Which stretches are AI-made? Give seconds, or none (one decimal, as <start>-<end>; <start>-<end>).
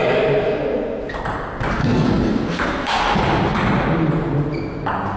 1.8-3.0